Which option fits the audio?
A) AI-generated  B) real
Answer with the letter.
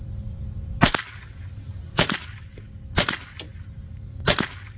B